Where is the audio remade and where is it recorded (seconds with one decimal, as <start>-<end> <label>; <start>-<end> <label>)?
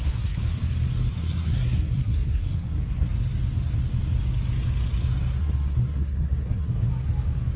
0.0-0.4 remade; 0.4-1.1 recorded; 1.1-3.1 remade; 3.1-5.4 recorded; 5.4-6.9 remade; 6.9-7.6 recorded